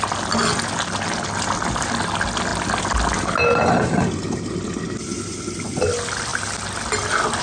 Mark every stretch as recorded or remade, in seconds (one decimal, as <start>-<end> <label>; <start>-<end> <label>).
0.0-7.4 recorded